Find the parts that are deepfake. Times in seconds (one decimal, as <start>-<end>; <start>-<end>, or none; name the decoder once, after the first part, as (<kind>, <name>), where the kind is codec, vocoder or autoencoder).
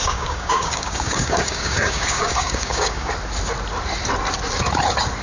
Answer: 0.0-3.1 (codec, DAC)